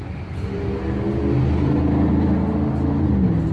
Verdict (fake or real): real